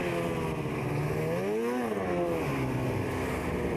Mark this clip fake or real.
real